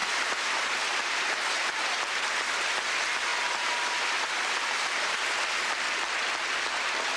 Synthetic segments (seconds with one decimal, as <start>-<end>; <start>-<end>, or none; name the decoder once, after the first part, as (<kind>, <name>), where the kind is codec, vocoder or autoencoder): 0.0-2.0 (vocoder, BigVGAN v2); 3.3-5.5